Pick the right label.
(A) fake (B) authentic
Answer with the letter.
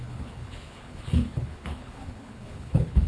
A